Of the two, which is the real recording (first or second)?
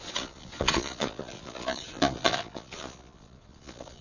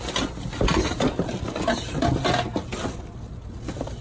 second